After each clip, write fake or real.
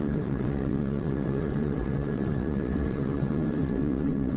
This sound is fake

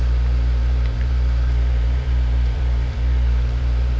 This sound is fake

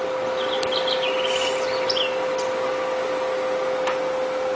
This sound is real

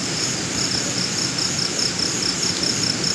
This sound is real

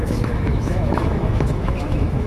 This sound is fake